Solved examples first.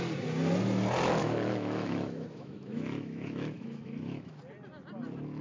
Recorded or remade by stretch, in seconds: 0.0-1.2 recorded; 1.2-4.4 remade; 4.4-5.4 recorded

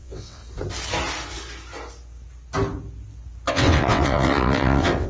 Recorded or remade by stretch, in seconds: 0.0-0.4 remade; 0.4-3.5 recorded; 3.5-5.1 remade

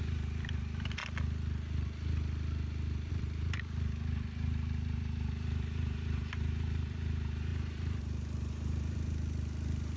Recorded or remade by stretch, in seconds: 0.0-1.0 remade; 1.0-3.1 recorded; 3.1-10.0 remade

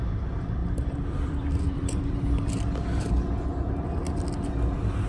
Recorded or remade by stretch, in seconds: 0.0-0.6 recorded; 0.6-3.1 remade; 3.1-5.1 recorded

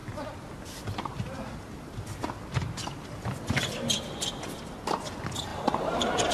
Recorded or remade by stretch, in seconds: 0.0-5.5 recorded; 5.5-6.3 remade

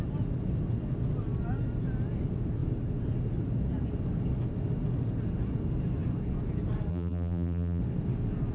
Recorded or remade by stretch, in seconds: 0.0-6.9 recorded; 6.9-7.8 remade; 7.8-8.5 recorded

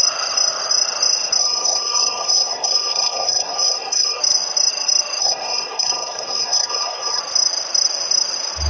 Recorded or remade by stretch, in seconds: 0.0-1.4 recorded; 1.4-4.2 remade; 4.2-5.2 recorded; 5.2-7.2 remade; 7.2-8.7 recorded

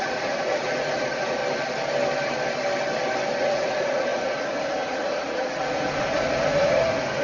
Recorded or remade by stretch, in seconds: 0.0-1.4 remade; 1.4-3.4 recorded; 3.4-7.2 remade